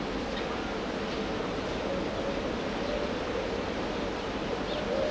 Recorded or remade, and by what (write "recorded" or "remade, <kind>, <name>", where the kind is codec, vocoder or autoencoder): recorded